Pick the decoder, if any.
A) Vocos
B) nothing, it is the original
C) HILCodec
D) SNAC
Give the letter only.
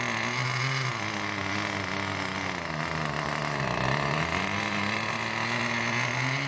B